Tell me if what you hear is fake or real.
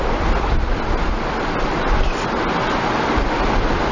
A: real